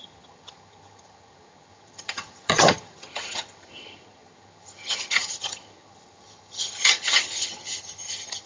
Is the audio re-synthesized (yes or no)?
yes